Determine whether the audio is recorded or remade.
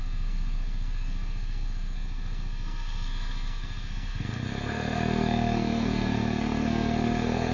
remade